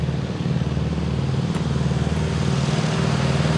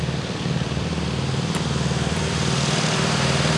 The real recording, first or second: first